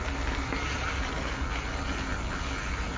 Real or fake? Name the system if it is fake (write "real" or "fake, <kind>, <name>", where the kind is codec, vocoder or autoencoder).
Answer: real